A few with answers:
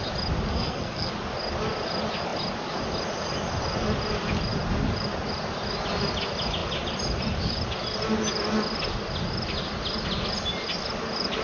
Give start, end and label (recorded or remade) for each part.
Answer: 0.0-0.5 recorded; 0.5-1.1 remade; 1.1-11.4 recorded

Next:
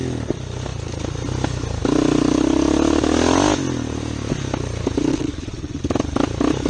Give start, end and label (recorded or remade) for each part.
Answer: 0.0-5.1 recorded; 5.1-5.8 remade; 5.8-6.7 recorded

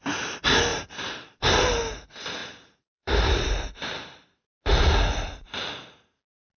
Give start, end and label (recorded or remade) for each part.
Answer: 0.0-0.7 recorded; 0.7-1.8 remade; 1.8-2.4 recorded; 2.4-3.4 remade; 3.4-6.6 recorded